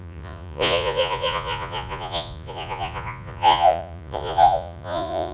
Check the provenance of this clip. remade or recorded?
remade